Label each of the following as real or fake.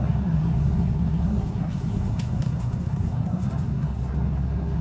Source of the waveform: fake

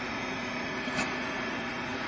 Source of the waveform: fake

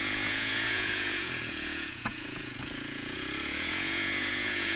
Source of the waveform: fake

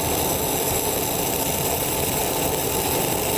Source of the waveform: fake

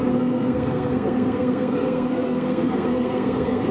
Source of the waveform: fake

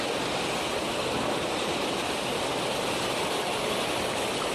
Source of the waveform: real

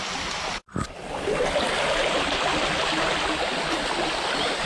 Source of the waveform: real